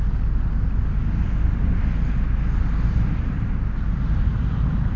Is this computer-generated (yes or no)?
no